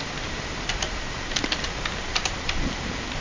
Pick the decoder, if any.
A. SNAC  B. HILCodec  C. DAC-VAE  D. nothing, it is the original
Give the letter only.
D